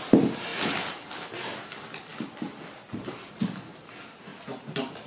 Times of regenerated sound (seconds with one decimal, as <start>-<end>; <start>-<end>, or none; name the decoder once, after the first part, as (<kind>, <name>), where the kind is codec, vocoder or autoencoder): none